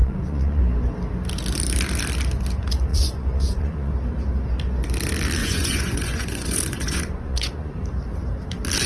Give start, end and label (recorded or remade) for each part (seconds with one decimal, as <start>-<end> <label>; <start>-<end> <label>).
0.0-0.6 remade; 0.6-2.9 recorded; 2.9-3.9 remade; 3.9-5.4 recorded; 5.4-7.7 remade; 7.7-8.9 recorded